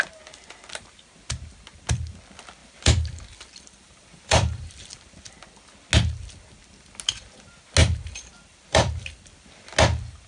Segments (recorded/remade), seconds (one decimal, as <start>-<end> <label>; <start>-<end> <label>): 0.0-2.6 recorded; 2.6-5.3 remade; 5.3-7.8 recorded; 7.8-9.3 remade; 9.3-10.3 recorded